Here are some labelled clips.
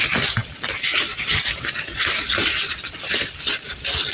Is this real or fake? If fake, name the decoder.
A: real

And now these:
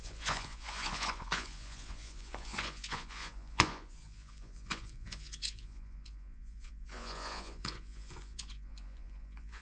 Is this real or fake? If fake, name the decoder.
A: fake, vocoder, Vocos